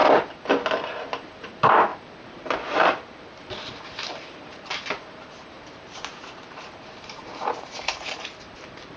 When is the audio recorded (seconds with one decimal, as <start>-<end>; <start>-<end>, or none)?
0.0-1.4